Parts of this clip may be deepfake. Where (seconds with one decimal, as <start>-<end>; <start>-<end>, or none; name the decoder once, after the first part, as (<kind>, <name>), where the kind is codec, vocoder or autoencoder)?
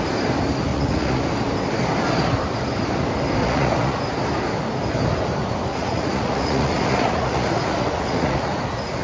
0.7-1.2 (vocoder, Vocos); 3.4-4.0; 5.7-9.0